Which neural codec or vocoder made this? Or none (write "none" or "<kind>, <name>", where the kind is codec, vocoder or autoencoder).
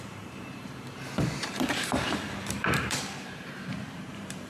vocoder, BigVGAN v2